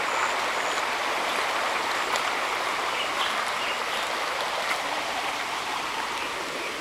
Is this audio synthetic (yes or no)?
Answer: no